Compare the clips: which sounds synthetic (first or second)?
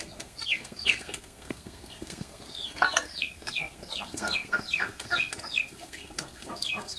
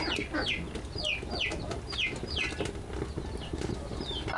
first